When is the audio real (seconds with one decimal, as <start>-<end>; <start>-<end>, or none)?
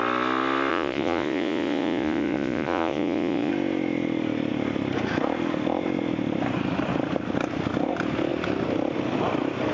0.0-0.7; 3.5-9.7